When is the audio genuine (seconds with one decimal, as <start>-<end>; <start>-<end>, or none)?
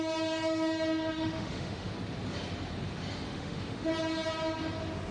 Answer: 0.0-1.1; 1.9-3.3; 3.9-5.1